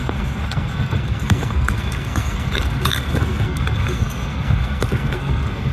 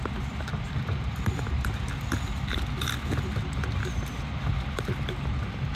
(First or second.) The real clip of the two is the second